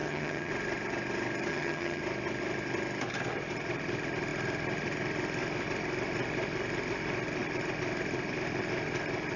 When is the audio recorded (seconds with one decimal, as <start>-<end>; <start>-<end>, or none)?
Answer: 0.5-1.5; 2.0-9.4